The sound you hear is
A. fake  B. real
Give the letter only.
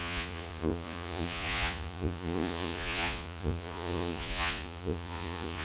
A